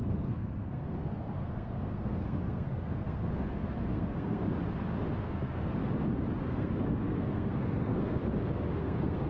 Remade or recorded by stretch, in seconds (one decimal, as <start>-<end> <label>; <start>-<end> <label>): 0.0-4.4 remade; 4.4-5.2 recorded; 5.2-5.8 remade; 5.8-6.4 recorded; 6.4-8.2 remade; 8.2-8.8 recorded; 8.8-9.3 remade